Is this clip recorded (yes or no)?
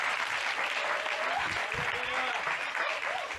yes